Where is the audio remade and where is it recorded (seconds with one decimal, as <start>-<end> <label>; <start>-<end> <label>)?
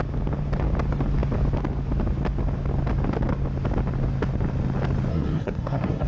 0.0-5.1 recorded; 5.1-6.1 remade